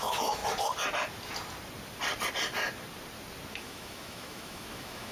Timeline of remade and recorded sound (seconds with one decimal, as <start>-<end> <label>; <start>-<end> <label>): 0.0-0.4 remade; 0.4-3.5 recorded; 3.5-5.1 remade